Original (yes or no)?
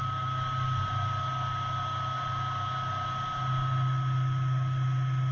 yes